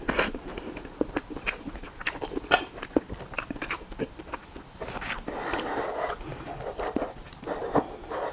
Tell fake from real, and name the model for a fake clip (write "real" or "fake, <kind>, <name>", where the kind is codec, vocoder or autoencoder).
fake, vocoder, BigVGAN v2